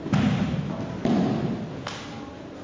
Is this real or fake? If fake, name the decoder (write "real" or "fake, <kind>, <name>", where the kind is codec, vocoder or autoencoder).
real